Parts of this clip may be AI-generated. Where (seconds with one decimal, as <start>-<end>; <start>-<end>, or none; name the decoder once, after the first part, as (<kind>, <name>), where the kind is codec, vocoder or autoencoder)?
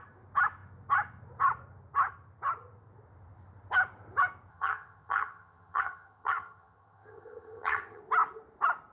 4.5-8.0 (vocoder, HiFi-GAN)